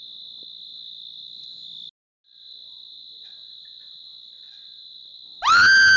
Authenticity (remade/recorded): recorded